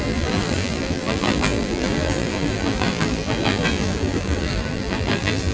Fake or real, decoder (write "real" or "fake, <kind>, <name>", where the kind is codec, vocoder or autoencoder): fake, vocoder, BigVGAN v2